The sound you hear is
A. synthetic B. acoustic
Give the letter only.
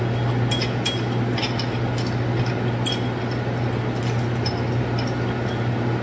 B